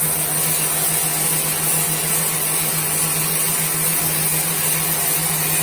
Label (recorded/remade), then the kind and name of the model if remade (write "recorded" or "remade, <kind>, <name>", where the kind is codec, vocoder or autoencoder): recorded